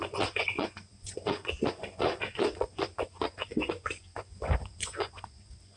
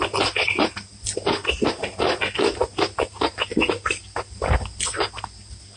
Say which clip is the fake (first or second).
first